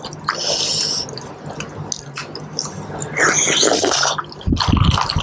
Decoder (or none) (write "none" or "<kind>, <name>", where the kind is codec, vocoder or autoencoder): none